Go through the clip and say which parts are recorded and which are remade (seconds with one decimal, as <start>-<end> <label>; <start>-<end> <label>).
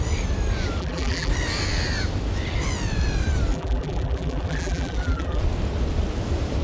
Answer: 0.0-0.8 recorded; 0.8-1.3 remade; 1.3-3.5 recorded; 3.5-5.4 remade; 5.4-6.6 recorded